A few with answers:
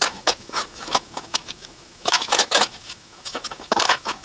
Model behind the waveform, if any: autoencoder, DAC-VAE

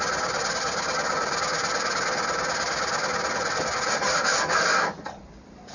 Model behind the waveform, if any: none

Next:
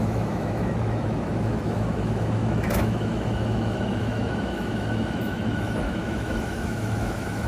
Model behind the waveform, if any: autoencoder, DAC-VAE